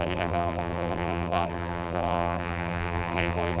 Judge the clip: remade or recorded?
remade